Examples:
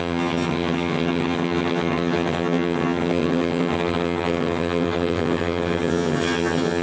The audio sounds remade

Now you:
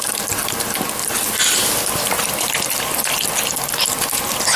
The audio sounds recorded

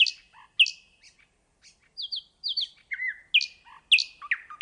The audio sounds recorded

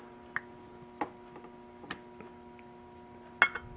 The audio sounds recorded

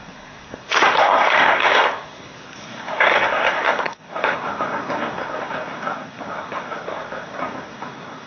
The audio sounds remade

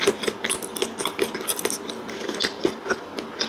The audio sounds recorded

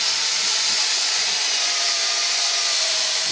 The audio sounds remade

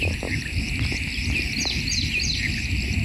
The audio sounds recorded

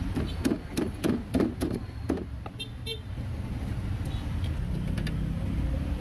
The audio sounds recorded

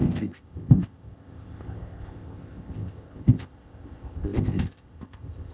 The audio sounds remade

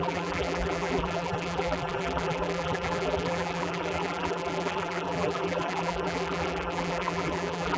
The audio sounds remade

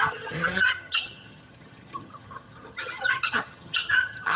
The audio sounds remade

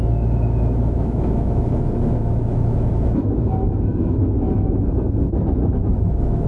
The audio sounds remade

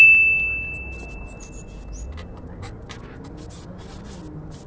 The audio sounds recorded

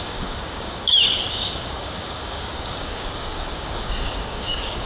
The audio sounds remade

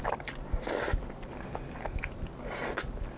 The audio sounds recorded